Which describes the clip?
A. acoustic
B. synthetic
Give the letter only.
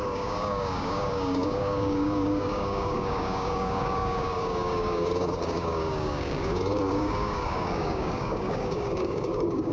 B